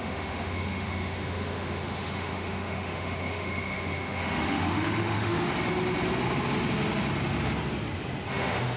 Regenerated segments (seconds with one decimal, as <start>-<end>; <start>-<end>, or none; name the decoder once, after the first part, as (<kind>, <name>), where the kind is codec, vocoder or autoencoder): 0.0-5.5 (autoencoder, DAC-VAE); 8.3-8.8